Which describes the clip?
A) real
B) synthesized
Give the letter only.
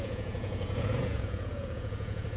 B